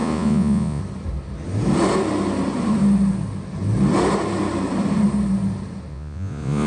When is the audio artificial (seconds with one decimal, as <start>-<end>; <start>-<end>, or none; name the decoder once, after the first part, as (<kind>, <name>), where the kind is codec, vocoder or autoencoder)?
0.0-0.8 (vocoder, Vocos); 5.9-6.7